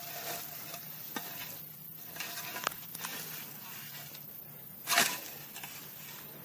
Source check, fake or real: real